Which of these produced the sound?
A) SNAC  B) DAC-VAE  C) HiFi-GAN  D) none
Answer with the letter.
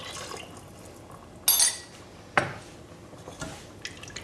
D